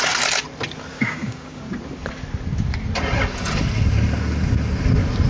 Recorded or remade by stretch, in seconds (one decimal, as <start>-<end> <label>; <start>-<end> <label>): 0.0-0.9 recorded; 0.9-1.6 remade; 1.6-5.3 recorded